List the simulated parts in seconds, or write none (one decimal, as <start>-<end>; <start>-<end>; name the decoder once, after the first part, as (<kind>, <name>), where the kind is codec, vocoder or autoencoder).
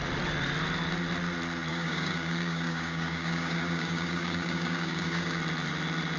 1.7-5.4 (codec, DAC)